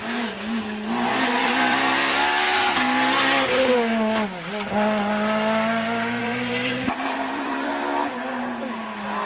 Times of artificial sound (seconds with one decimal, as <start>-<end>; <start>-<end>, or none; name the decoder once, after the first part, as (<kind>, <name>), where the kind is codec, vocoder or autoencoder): 1.4-2.3 (vocoder, BigVGAN v2); 6.2-7.7